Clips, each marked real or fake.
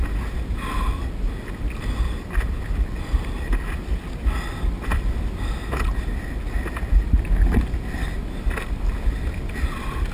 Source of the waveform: real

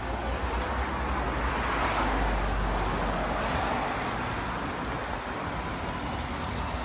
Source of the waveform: real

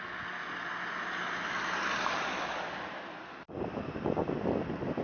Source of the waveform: real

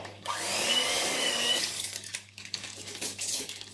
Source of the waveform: fake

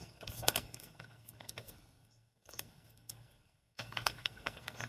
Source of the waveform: fake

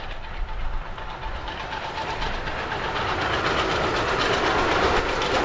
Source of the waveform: real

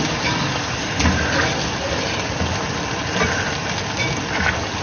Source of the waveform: real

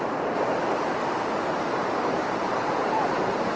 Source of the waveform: real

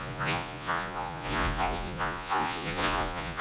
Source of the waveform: fake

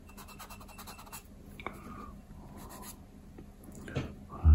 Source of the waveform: real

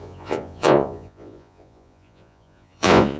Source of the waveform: fake